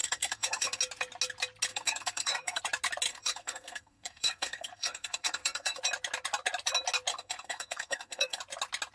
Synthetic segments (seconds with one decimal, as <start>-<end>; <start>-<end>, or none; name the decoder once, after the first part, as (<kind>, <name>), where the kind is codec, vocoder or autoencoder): 0.0-0.8 (codec, SNAC); 1.7-2.6; 3.1-5.8; 7.1-8.4